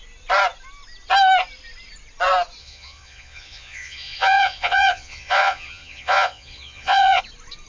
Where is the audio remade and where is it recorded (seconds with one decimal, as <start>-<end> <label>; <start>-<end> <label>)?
0.0-2.6 recorded; 2.6-7.2 remade; 7.2-7.7 recorded